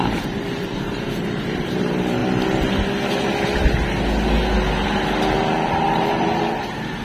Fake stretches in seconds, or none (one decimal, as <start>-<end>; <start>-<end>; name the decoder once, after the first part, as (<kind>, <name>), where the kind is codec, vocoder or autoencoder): 0.0-2.2 (vocoder, BigVGAN v2); 5.7-7.0